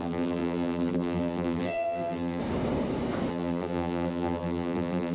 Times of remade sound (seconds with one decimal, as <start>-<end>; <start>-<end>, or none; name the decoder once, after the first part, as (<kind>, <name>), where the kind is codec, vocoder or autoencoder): 0.0-2.4 (vocoder, BigVGAN v2); 3.3-5.1